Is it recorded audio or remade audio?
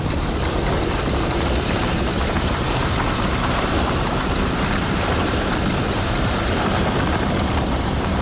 remade